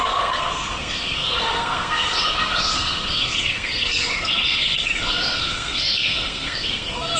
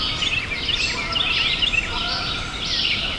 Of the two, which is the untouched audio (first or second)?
second